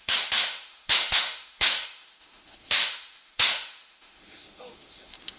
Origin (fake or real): fake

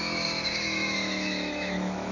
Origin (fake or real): fake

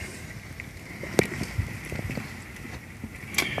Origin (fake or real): real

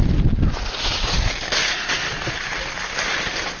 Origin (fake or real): real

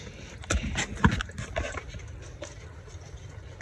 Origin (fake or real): real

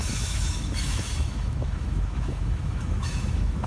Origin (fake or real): fake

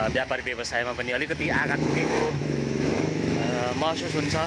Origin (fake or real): fake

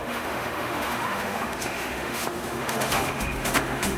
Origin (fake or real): fake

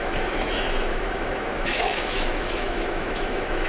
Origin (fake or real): fake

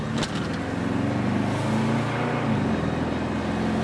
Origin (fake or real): real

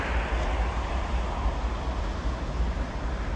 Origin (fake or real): real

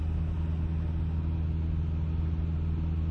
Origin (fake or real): real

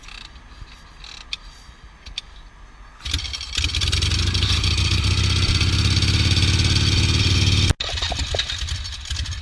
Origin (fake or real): real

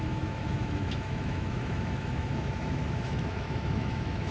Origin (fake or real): fake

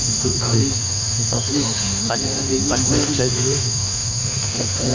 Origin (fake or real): fake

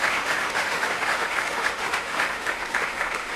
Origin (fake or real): fake